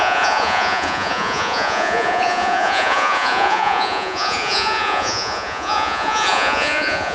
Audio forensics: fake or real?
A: fake